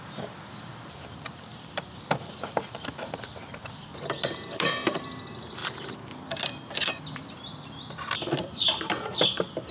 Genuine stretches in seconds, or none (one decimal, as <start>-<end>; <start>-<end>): 3.3-3.9